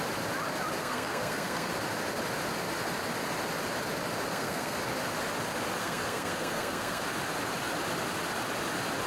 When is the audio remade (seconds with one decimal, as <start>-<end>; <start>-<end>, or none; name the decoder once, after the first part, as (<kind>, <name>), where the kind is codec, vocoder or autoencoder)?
0.8-1.7 (codec, SNAC); 4.3-4.8; 5.8-7.0